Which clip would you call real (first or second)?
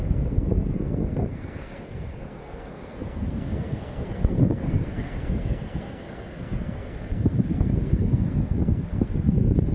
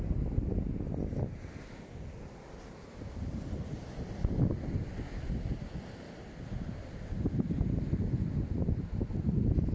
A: second